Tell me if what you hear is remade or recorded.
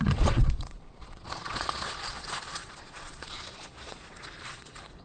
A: remade